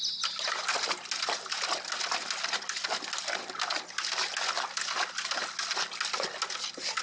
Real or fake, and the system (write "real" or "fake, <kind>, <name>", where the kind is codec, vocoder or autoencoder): real